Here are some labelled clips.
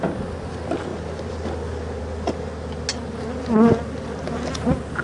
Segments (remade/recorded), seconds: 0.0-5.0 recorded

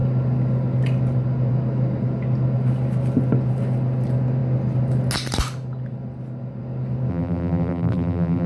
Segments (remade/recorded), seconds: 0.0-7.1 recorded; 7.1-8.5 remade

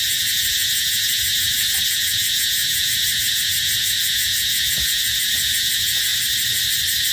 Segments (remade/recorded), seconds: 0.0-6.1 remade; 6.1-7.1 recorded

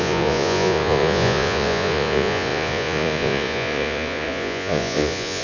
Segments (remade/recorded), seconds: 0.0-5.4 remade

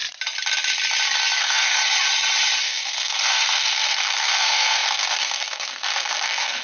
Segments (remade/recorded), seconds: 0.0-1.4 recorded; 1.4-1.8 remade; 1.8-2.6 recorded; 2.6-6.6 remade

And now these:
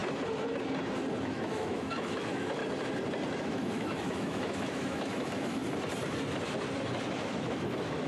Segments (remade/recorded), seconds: 0.0-1.2 recorded; 1.2-2.6 remade; 2.6-3.4 recorded; 3.4-5.6 remade; 5.6-7.1 recorded; 7.1-8.1 remade

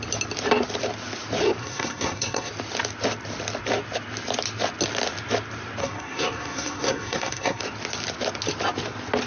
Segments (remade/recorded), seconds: 0.0-1.6 recorded; 1.6-2.5 remade; 2.5-5.8 recorded; 5.8-7.6 remade; 7.6-9.3 recorded

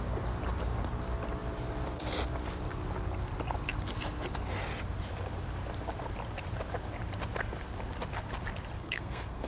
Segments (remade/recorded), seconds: 0.0-8.8 recorded; 8.8-9.5 remade